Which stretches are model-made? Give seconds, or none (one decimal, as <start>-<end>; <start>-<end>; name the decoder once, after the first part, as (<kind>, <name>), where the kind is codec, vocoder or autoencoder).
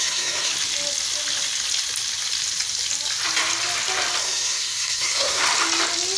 0.0-0.5 (codec, SNAC); 4.2-5.4